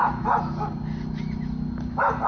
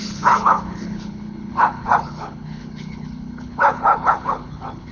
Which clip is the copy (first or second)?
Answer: second